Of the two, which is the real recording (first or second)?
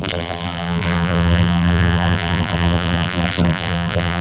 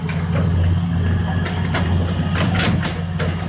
second